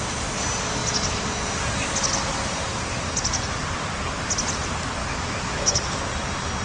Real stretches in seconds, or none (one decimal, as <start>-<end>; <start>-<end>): 0.0-5.0; 5.8-6.6